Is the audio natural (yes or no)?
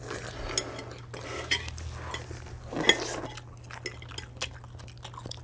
yes